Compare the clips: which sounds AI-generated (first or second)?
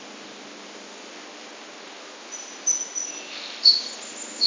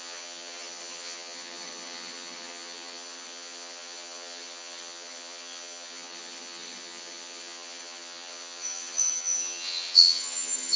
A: second